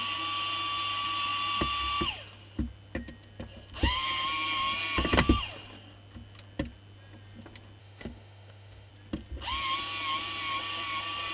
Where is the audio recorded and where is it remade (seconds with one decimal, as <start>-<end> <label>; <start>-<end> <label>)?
0.0-7.8 recorded; 7.8-8.9 remade; 8.9-11.3 recorded